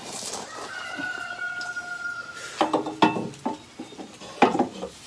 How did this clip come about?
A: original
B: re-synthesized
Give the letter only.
A